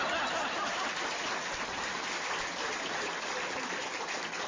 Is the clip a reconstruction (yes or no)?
no